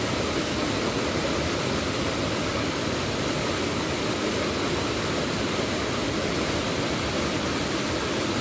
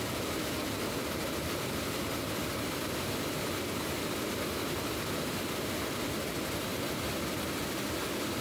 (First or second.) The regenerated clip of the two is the second